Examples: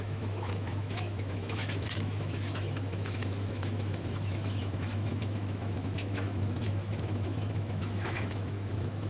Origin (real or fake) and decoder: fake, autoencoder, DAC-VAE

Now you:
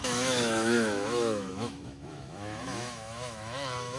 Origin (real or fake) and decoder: fake, autoencoder, DAC-VAE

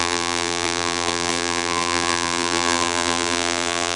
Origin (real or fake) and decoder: fake, vocoder, BigVGAN v2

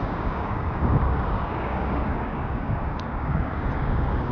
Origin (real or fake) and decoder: fake, codec, DAC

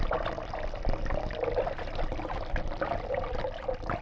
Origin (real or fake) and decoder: real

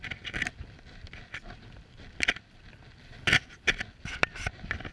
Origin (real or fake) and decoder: real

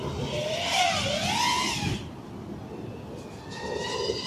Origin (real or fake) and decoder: real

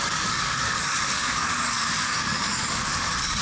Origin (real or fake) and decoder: fake, codec, DAC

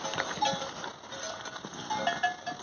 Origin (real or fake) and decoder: real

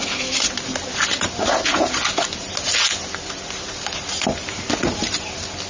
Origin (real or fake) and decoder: real